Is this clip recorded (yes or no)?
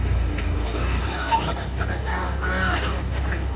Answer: no